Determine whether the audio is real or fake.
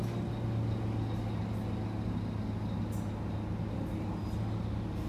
real